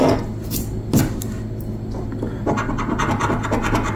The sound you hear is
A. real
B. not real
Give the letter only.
A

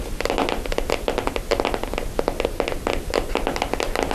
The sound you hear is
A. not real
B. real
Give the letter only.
B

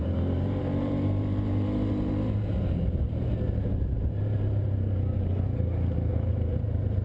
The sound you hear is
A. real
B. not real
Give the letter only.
B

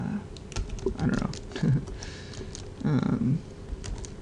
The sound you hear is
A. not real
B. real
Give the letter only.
B